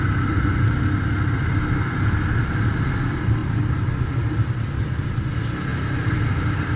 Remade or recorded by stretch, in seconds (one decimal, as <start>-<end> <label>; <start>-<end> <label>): 0.0-6.8 recorded